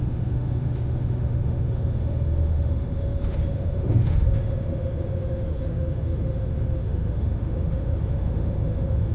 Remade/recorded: remade